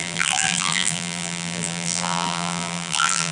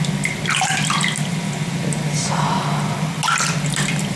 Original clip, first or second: second